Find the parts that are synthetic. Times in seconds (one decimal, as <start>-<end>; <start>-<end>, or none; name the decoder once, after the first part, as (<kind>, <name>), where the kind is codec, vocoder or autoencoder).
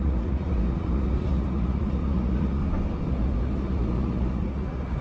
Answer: 0.0-2.6 (vocoder, Vocos); 3.1-5.0